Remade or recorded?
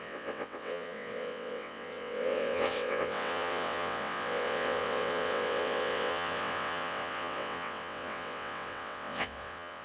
remade